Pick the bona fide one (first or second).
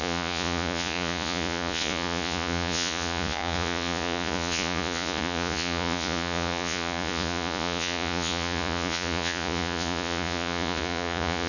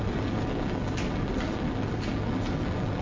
second